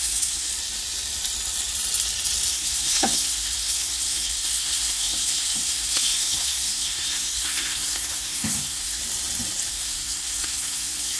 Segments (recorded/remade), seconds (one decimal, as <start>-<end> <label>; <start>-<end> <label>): 0.0-0.5 remade; 0.5-2.5 recorded; 2.5-9.0 remade; 9.0-9.7 recorded; 9.7-11.2 remade